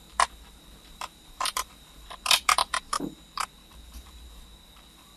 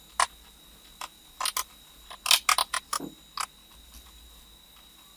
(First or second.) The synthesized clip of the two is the first